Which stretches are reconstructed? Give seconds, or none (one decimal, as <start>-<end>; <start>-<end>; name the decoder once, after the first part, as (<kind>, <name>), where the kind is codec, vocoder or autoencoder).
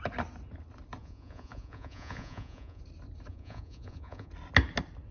1.0-2.8 (vocoder, Vocos); 3.3-4.3